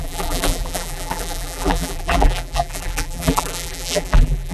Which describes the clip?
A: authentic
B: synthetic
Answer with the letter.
B